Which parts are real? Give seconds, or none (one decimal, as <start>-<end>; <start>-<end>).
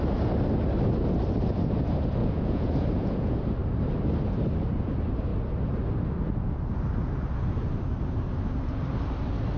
0.0-2.2; 3.4-9.6